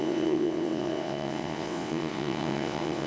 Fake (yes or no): yes